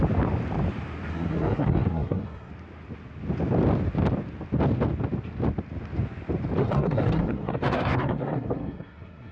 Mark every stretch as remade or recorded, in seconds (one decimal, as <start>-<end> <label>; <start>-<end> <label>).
0.0-1.1 recorded; 1.1-2.5 remade; 2.5-6.6 recorded; 6.6-9.3 remade